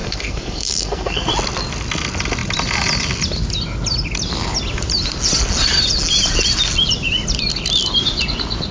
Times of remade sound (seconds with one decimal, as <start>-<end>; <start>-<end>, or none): 0.0-1.3